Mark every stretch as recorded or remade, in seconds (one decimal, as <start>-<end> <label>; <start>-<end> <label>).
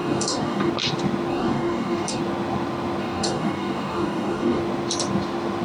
0.0-0.7 remade; 0.7-1.3 recorded; 1.3-2.2 remade; 2.2-3.0 recorded; 3.0-4.6 remade; 4.6-5.6 recorded